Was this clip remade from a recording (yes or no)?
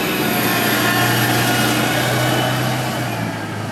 no